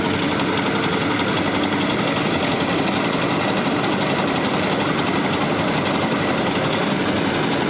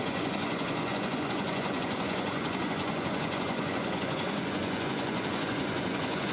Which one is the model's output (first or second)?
second